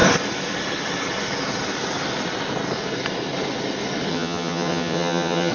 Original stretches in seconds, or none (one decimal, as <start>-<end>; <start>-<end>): 0.0-4.1